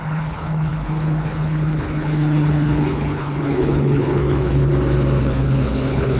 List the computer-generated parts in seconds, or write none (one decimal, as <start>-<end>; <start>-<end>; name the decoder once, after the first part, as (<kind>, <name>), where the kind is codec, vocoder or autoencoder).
0.0-4.7 (codec, HILCodec); 5.2-6.2